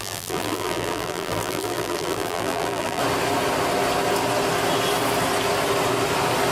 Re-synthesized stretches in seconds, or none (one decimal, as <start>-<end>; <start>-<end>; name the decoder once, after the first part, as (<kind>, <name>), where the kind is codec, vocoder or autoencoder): 0.0-3.0 (vocoder, BigVGAN v2)